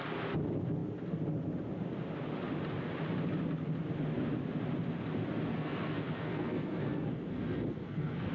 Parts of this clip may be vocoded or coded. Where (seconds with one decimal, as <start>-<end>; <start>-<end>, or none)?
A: 5.5-8.3